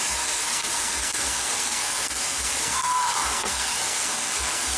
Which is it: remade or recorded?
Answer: remade